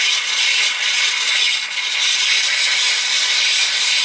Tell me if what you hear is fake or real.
real